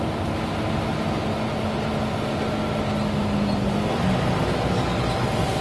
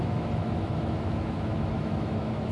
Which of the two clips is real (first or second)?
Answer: first